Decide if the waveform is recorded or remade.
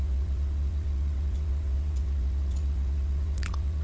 remade